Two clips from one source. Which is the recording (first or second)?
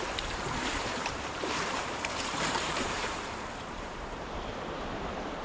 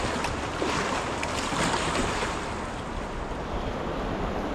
second